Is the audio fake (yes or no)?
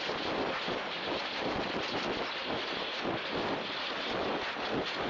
no